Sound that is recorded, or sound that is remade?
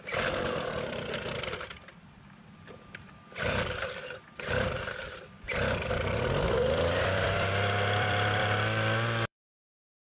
remade